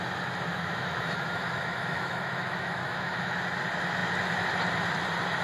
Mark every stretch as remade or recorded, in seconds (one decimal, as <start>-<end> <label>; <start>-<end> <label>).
0.0-0.5 recorded; 0.5-3.4 remade; 3.4-5.4 recorded